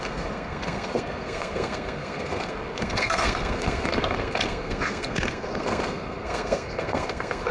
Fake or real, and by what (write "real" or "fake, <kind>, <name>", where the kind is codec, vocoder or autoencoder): fake, codec, SNAC